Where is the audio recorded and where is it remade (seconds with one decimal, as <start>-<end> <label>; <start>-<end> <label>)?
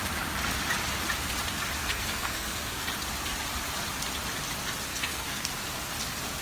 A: 0.0-1.8 recorded; 1.8-2.9 remade; 2.9-4.9 recorded; 4.9-5.5 remade; 5.5-6.4 recorded